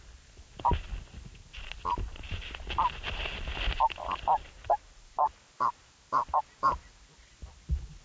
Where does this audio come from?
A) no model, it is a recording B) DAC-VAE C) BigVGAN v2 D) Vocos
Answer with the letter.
A